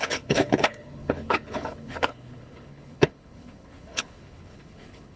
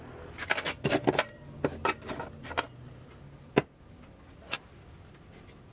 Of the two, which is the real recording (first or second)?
second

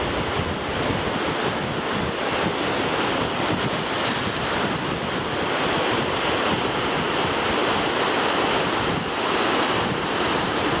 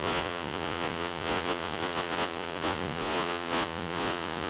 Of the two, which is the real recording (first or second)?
first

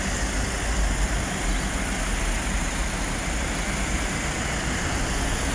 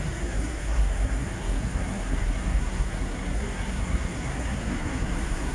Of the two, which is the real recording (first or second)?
first